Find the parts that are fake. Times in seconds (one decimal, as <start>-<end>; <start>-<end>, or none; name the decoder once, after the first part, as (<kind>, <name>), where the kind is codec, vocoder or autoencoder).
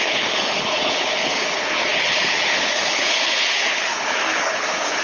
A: 0.0-5.0 (codec, HILCodec)